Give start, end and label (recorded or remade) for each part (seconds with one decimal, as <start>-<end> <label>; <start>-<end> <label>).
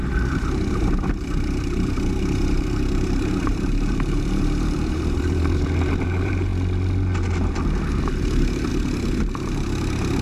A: 0.0-6.5 remade; 6.5-7.8 recorded; 7.8-8.7 remade; 8.7-9.3 recorded; 9.3-10.2 remade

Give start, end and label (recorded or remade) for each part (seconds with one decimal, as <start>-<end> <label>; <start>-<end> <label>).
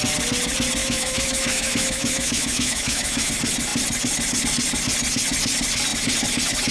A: 0.0-0.8 recorded; 0.8-3.3 remade; 3.3-6.7 recorded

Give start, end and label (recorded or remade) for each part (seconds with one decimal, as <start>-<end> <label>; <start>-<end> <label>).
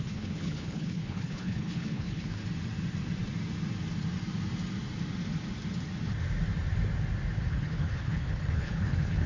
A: 0.0-2.4 remade; 2.4-7.5 recorded; 7.5-9.3 remade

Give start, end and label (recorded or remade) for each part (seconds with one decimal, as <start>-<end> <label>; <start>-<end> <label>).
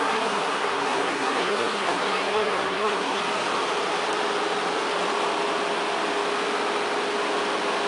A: 0.0-3.2 remade; 3.2-7.9 recorded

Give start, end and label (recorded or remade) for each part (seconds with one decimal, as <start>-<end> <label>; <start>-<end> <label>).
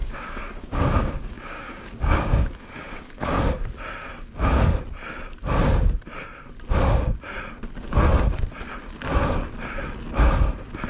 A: 0.0-3.4 remade; 3.4-10.9 recorded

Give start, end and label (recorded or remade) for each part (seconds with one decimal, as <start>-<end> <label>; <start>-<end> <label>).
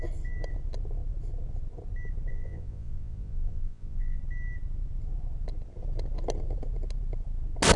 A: 0.0-2.3 recorded; 2.3-4.2 remade; 4.2-7.8 recorded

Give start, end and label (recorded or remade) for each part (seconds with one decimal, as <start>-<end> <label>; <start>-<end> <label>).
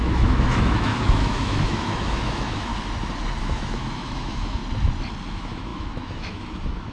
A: 0.0-2.7 remade; 2.7-3.4 recorded; 3.4-4.6 remade; 4.6-5.3 recorded; 5.3-6.9 remade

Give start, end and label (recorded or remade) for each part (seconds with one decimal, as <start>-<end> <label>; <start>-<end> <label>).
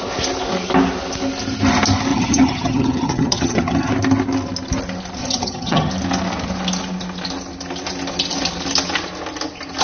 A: 0.0-2.1 recorded; 2.1-3.9 remade; 3.9-5.2 recorded; 5.2-5.9 remade; 5.9-9.8 recorded